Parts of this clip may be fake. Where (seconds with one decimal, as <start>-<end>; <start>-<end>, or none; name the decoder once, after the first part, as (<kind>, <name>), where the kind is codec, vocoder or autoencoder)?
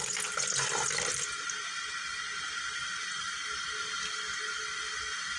none